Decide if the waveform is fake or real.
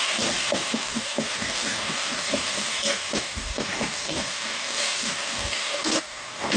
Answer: fake